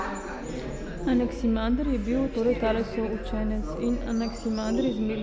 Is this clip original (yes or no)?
yes